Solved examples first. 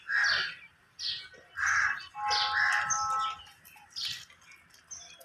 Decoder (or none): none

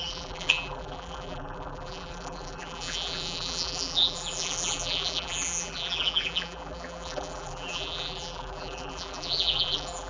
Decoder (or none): vocoder, BigVGAN v2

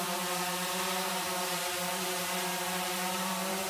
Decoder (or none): vocoder, BigVGAN v2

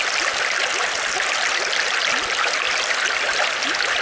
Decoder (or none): none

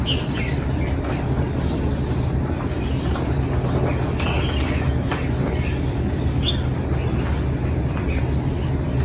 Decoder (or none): none